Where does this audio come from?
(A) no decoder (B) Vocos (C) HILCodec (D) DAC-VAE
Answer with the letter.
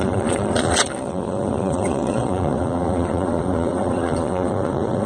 B